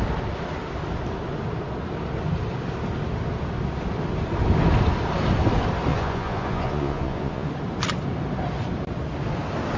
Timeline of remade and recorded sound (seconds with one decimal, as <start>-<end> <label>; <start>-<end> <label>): 0.0-5.9 recorded; 5.9-7.5 remade; 7.5-9.8 recorded